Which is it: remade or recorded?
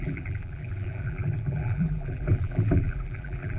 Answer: remade